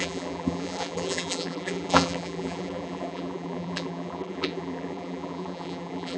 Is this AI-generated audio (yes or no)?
yes